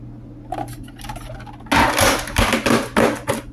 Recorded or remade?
recorded